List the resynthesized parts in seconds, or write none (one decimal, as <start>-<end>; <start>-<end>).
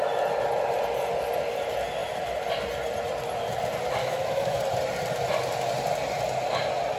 4.0-4.6